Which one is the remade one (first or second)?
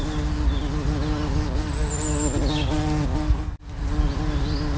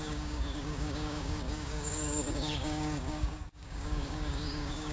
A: second